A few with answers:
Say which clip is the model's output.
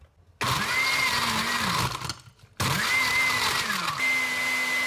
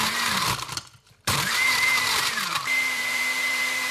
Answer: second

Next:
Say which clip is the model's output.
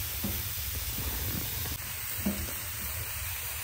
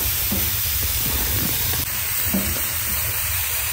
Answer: second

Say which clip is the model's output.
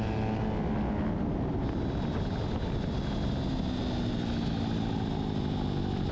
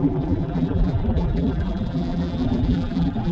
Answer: second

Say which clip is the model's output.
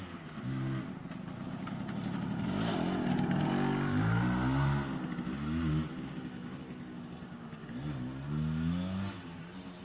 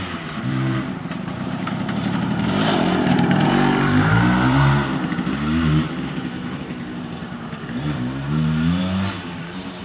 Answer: second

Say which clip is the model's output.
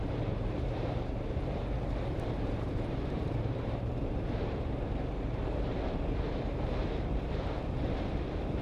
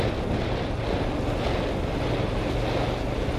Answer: first